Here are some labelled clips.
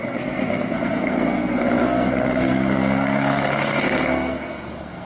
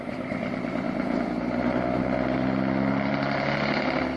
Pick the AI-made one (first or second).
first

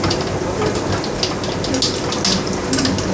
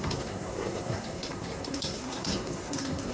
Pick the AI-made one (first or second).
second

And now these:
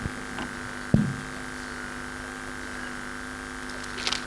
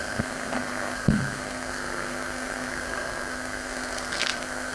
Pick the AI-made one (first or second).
second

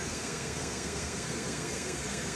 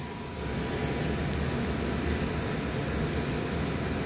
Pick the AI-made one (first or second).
first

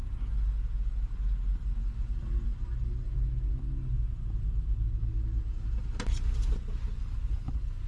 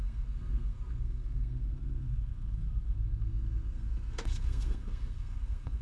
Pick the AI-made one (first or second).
second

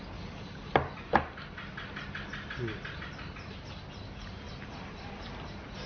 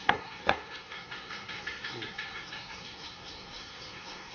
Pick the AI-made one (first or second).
second